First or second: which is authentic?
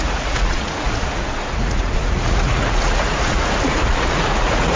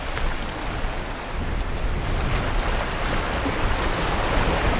second